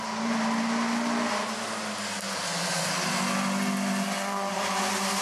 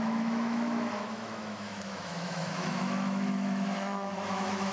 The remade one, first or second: second